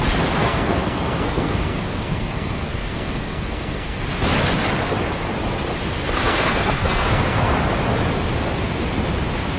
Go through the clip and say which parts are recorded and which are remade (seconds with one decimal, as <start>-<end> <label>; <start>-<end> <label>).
0.0-0.4 recorded; 0.4-4.0 remade; 4.0-6.2 recorded; 6.2-7.5 remade; 7.5-9.6 recorded